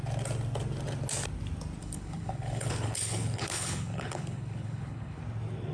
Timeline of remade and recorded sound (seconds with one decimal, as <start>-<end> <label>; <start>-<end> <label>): 0.0-1.8 recorded; 1.8-5.2 remade; 5.2-5.7 recorded